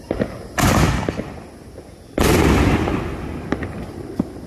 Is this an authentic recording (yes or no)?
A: yes